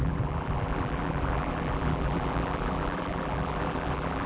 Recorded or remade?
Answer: remade